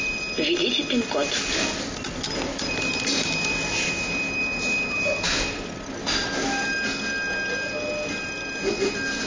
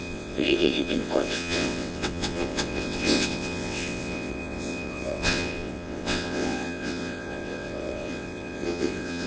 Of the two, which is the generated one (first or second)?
second